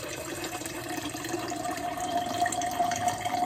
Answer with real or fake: fake